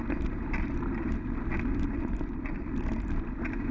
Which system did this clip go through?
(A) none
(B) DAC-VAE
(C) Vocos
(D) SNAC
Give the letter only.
A